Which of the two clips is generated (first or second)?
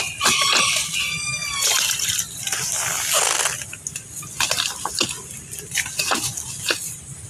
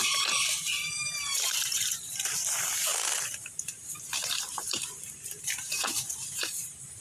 second